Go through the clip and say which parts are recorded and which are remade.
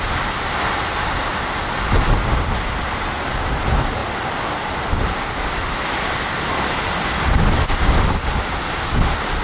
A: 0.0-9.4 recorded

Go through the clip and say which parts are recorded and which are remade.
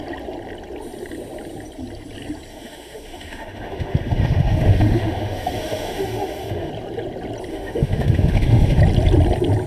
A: 0.0-2.5 recorded; 2.5-6.7 remade; 6.7-7.5 recorded; 7.5-8.8 remade; 8.8-9.7 recorded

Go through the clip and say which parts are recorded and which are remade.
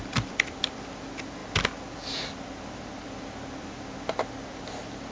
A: 0.0-5.1 recorded